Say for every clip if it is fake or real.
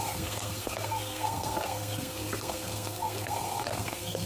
fake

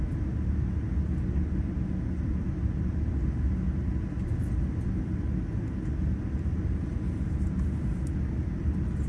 real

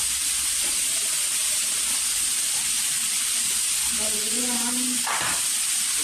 real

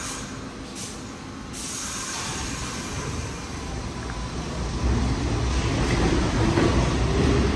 real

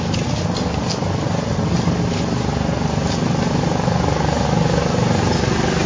real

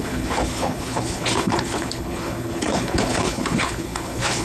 fake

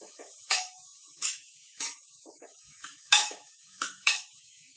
fake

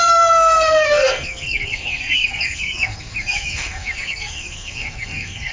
fake